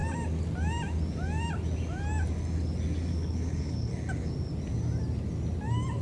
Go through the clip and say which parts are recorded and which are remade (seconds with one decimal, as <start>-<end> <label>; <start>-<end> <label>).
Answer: 0.0-3.1 recorded; 3.1-3.9 remade; 3.9-6.0 recorded